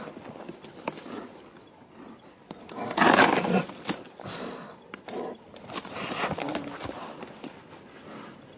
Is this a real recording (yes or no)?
yes